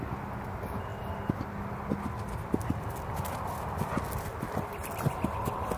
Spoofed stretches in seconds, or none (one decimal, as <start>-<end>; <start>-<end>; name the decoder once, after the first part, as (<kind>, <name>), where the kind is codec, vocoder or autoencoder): none